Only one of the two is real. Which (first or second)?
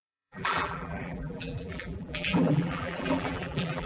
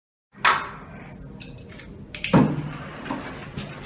second